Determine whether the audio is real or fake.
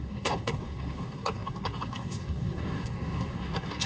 fake